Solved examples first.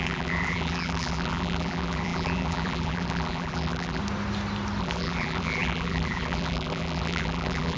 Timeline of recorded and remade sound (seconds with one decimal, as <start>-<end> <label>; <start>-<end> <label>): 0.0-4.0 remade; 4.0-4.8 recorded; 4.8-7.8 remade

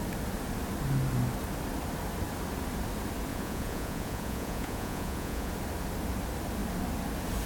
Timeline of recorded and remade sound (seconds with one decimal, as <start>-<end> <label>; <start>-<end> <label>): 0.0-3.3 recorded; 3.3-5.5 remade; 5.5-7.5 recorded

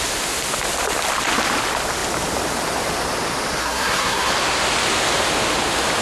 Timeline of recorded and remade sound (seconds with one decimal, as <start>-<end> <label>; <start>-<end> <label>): 0.0-3.6 recorded; 3.6-4.3 remade; 4.3-6.0 recorded